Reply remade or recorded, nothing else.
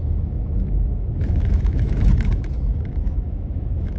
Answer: remade